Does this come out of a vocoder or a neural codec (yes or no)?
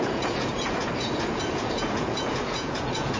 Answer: yes